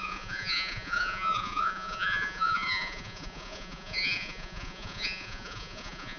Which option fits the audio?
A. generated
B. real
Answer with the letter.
A